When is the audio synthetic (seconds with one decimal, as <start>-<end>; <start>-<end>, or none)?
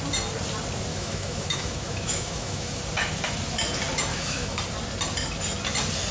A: 0.9-2.8; 4.1-4.6